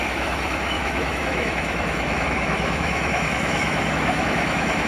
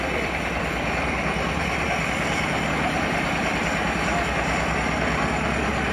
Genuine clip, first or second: second